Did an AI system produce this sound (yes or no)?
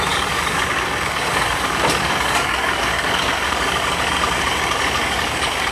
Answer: yes